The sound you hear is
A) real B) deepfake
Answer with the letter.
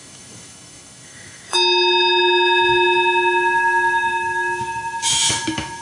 B